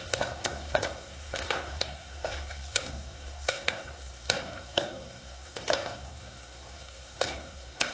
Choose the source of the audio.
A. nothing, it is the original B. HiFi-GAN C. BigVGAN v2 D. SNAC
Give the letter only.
D